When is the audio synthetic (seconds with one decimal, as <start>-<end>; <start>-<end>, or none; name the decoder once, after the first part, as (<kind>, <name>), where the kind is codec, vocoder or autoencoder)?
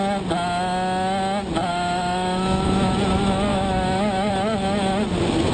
1.7-2.9 (autoencoder, DAC-VAE); 3.5-4.3